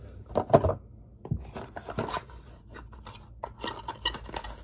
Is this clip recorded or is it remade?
recorded